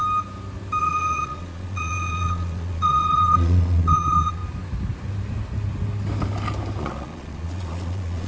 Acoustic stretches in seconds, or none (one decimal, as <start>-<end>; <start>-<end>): 0.0-0.8; 4.4-6.8